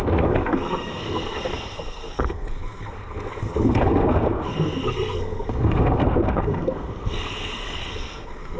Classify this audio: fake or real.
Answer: fake